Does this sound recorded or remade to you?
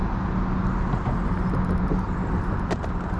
recorded